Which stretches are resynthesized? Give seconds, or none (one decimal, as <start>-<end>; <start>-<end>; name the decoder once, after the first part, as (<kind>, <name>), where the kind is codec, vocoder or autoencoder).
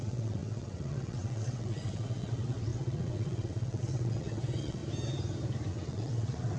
0.0-4.8 (vocoder, WaveNeXt); 5.7-6.6